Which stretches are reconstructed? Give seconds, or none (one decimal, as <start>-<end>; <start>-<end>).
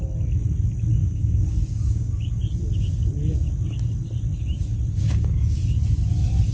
1.0-2.4; 5.0-5.6